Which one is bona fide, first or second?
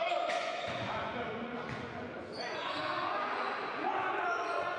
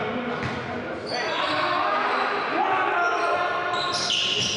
second